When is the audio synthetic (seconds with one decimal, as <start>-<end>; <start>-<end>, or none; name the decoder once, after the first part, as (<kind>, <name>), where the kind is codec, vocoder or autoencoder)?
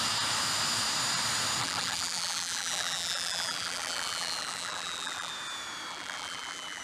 1.6-5.3 (vocoder, BigVGAN v2); 5.9-6.8